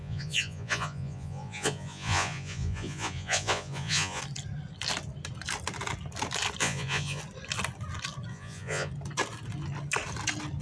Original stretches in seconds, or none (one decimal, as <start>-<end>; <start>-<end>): 4.2-6.6; 7.2-8.3; 8.9-10.6